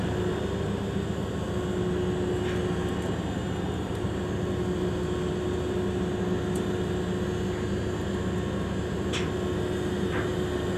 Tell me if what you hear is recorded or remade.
recorded